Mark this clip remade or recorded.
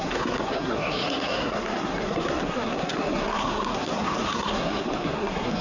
remade